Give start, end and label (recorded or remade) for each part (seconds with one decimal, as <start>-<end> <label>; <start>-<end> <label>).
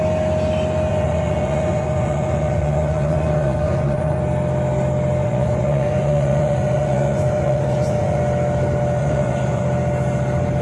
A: 0.0-0.9 recorded; 0.9-4.2 remade; 4.2-5.2 recorded; 5.2-8.2 remade; 8.2-9.0 recorded; 9.0-9.6 remade; 9.6-10.6 recorded